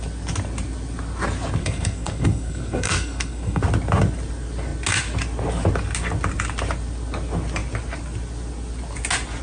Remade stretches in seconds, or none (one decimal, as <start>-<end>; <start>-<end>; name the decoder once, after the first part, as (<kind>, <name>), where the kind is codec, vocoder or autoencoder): 1.6-3.6 (codec, SNAC)